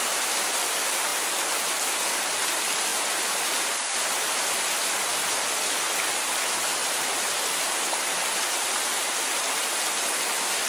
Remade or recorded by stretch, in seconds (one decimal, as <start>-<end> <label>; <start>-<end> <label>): 0.0-2.9 recorded; 2.9-5.1 remade; 5.1-6.8 recorded; 6.8-7.4 remade; 7.4-10.7 recorded